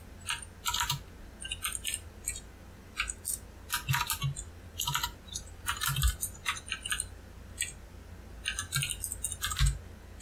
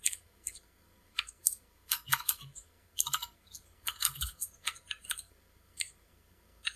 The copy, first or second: second